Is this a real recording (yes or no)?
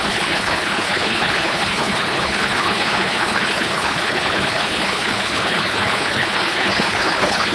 no